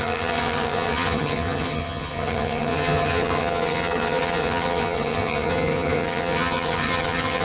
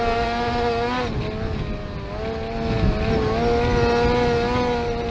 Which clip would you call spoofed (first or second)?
first